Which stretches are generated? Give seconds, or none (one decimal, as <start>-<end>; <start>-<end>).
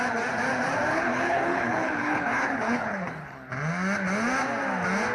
0.9-3.5